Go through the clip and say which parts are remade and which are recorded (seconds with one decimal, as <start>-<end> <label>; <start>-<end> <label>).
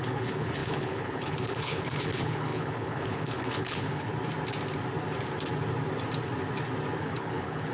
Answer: 0.0-4.1 remade; 4.1-7.0 recorded; 7.0-7.7 remade